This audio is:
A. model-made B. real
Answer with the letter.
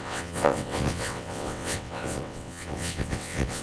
A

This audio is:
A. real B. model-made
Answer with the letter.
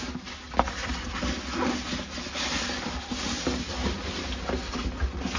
A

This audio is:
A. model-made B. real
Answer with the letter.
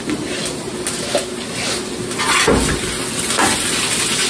B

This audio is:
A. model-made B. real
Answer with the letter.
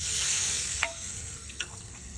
A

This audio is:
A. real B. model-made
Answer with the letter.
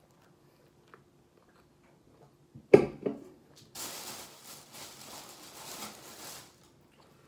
A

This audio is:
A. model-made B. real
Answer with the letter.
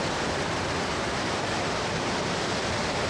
B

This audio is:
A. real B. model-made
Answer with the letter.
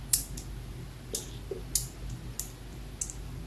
A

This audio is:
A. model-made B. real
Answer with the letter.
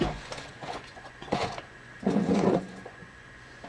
A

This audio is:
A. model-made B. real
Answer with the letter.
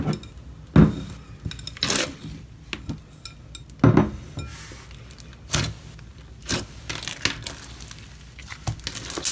B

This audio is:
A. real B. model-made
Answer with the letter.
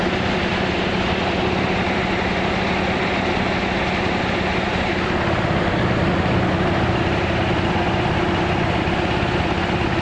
A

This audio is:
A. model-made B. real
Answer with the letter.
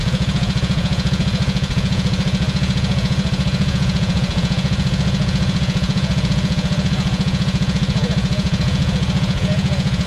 A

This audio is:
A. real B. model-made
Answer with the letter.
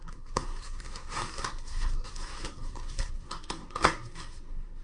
B